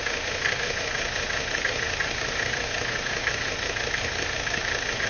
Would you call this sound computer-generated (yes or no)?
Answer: yes